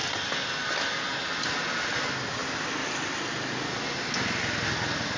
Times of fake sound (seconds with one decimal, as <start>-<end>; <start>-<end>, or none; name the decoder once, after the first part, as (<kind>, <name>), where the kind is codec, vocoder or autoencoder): none